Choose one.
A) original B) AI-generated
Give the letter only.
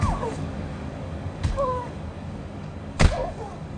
B